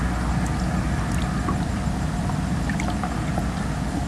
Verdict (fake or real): real